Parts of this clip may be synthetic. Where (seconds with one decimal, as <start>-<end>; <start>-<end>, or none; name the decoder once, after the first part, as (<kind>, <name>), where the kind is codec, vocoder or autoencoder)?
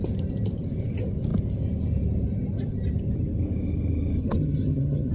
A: 4.2-5.1 (vocoder, HiFi-GAN)